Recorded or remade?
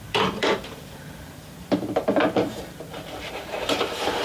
remade